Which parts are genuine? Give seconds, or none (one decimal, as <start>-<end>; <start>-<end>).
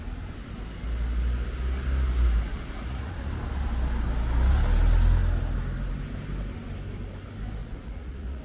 0.0-2.5; 3.3-7.6